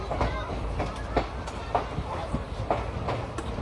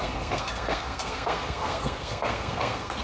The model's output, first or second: second